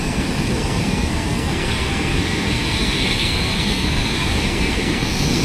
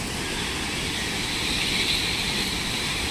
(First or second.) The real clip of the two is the second